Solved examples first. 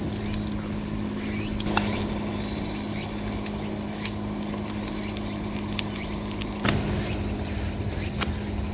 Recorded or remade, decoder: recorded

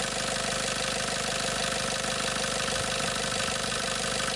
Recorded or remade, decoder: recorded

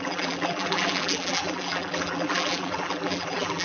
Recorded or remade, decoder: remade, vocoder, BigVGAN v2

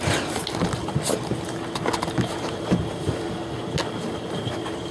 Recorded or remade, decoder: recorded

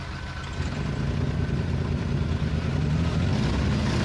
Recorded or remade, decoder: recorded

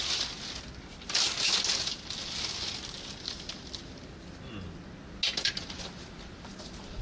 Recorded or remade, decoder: recorded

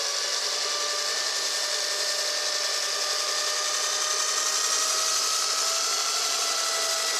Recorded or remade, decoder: recorded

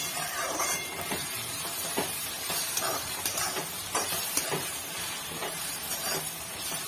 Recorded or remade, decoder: remade, vocoder, BigVGAN v2